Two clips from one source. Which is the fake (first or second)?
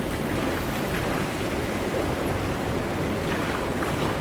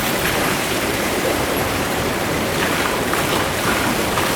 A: second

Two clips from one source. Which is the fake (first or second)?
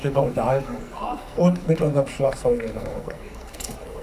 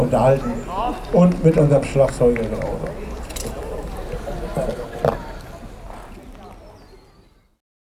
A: first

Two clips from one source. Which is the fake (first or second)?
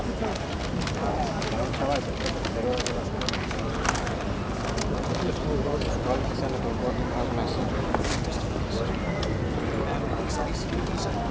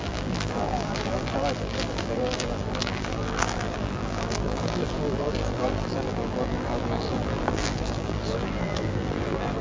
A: second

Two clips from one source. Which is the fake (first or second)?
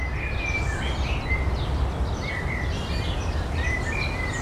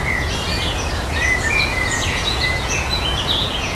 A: second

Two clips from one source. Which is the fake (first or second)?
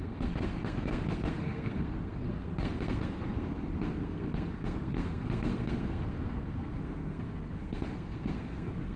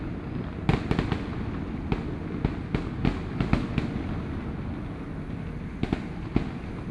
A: first